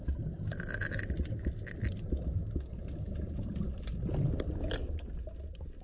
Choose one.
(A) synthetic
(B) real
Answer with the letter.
B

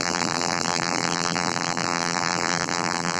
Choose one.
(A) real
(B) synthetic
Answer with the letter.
B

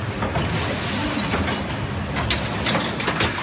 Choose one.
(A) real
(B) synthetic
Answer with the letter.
A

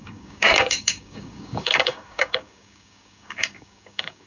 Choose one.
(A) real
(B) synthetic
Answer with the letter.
B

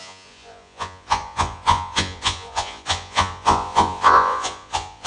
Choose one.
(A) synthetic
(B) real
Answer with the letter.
A